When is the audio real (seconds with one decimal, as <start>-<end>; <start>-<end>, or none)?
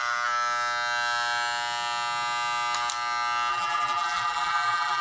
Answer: 0.0-3.5